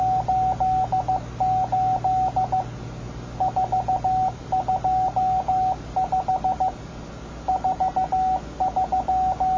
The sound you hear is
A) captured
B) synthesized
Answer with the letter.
A